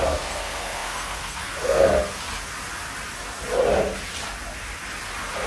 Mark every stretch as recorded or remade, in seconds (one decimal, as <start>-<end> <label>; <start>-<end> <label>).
0.0-1.9 remade; 1.9-5.5 recorded